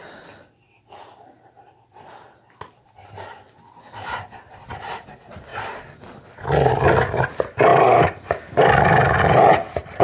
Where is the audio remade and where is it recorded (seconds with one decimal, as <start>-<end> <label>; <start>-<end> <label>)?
0.0-10.0 recorded